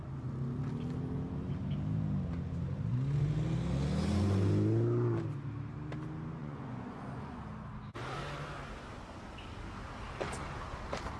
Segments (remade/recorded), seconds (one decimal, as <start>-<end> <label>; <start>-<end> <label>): 0.0-6.4 recorded; 6.4-7.4 remade; 7.4-11.2 recorded